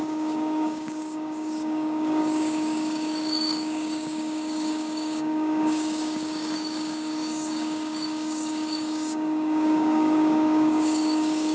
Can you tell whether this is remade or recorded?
remade